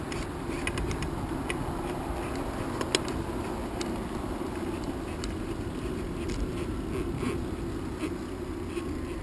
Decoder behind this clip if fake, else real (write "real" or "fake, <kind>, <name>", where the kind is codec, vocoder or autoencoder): real